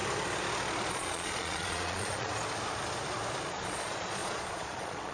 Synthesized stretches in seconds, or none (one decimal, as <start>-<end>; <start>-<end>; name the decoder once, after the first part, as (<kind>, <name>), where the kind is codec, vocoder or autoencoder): 0.9-2.3 (vocoder, Vocos); 3.5-5.1